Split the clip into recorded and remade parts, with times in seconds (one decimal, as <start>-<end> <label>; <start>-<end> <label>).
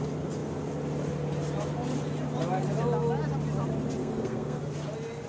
0.0-4.0 recorded; 4.0-4.6 remade; 4.6-5.3 recorded